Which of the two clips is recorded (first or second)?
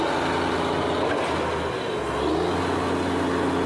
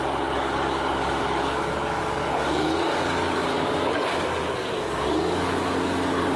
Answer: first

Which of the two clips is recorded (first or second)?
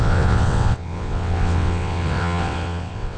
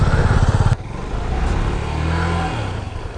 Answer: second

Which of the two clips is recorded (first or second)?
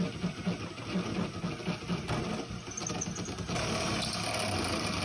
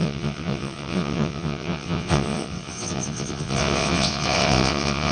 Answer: first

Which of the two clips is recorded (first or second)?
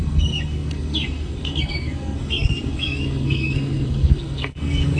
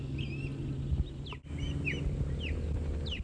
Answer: second